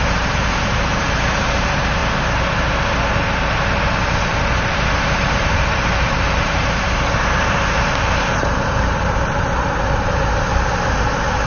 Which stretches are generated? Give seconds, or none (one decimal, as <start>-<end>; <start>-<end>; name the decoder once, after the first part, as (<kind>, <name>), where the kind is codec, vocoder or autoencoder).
0.0-2.0 (vocoder, BigVGAN v2); 3.8-11.5